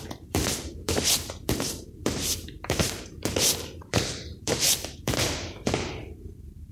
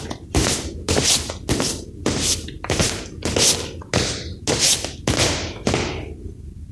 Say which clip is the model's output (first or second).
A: first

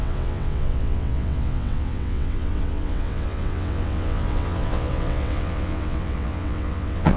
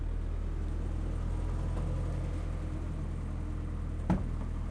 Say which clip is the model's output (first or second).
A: first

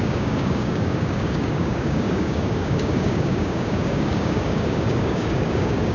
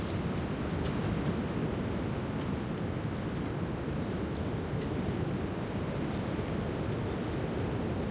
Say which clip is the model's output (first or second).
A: first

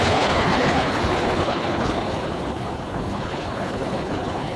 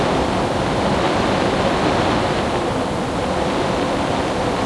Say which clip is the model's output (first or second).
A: first